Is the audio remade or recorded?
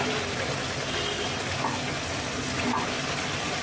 recorded